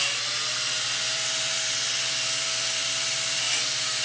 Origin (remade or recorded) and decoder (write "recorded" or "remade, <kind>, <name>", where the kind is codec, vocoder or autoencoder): remade, vocoder, BigVGAN v2